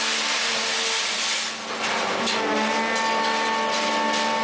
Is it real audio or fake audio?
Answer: real